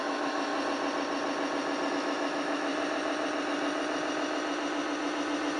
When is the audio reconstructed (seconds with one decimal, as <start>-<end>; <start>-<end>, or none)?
0.0-0.5; 1.9-2.7